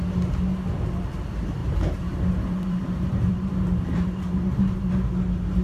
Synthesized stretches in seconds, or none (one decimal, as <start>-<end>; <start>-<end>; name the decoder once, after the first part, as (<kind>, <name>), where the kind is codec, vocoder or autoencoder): 1.6-4.6 (vocoder, BigVGAN v2)